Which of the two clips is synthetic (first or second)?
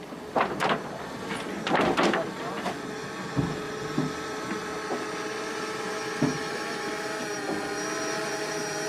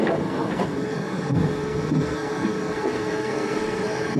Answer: second